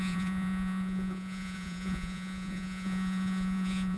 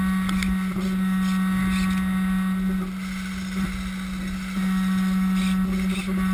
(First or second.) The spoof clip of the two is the first